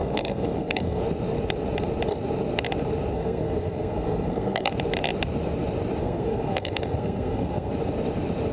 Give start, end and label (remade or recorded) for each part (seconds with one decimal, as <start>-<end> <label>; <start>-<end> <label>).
0.0-1.0 remade; 1.0-3.1 recorded; 3.1-4.7 remade; 4.7-6.0 recorded; 6.0-7.7 remade; 7.7-8.5 recorded